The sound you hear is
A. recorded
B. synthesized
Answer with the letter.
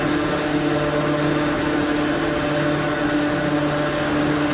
A